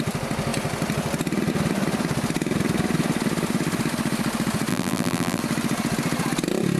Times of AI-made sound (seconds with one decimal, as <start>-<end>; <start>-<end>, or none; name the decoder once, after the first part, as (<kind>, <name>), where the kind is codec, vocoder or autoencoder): 4.7-5.4 (vocoder, BigVGAN v2)